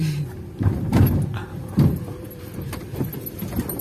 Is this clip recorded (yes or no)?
yes